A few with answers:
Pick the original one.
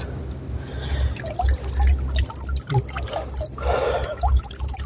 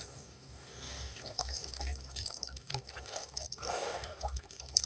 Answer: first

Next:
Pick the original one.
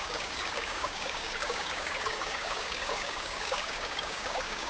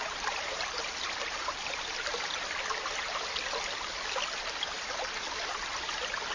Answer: second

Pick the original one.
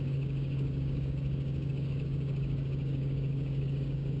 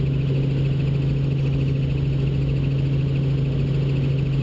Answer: second